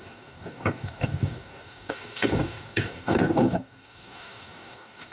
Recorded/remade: remade